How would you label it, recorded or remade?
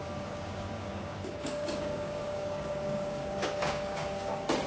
remade